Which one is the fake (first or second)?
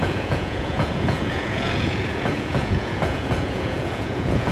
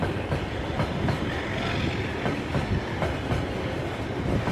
first